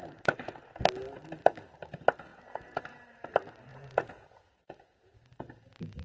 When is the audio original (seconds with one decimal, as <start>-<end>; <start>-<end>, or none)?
0.0-2.3; 2.8-3.7; 5.1-6.0